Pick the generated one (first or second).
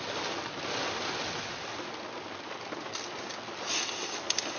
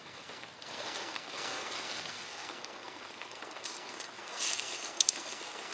second